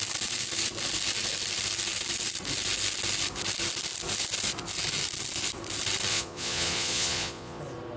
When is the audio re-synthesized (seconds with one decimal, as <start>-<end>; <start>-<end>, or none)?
6.1-7.6